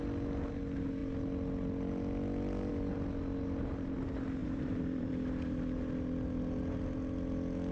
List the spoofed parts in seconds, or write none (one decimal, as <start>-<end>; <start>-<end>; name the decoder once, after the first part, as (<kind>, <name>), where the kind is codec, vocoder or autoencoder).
4.4-5.1 (vocoder, BigVGAN v2)